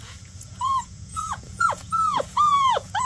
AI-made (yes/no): yes